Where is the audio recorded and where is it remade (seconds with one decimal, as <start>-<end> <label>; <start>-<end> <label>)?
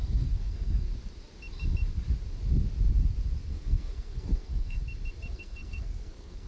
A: 0.0-0.9 remade; 0.9-3.5 recorded; 3.5-4.8 remade; 4.8-5.3 recorded; 5.3-6.5 remade